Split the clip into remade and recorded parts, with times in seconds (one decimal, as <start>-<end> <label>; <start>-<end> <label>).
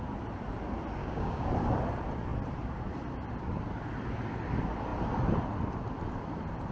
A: 0.0-1.0 recorded; 1.0-1.5 remade; 1.5-6.7 recorded